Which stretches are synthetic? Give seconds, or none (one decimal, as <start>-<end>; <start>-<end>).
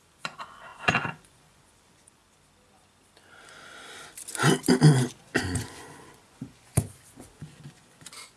0.0-2.2; 5.2-8.4